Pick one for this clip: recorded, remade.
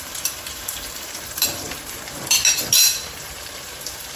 remade